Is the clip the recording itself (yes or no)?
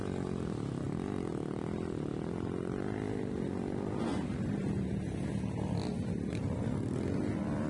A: yes